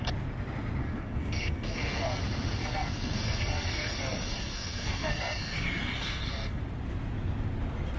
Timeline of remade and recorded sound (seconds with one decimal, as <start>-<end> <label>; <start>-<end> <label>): 0.0-0.8 recorded; 0.8-2.2 remade; 2.2-2.6 recorded; 2.6-6.6 remade; 6.6-8.0 recorded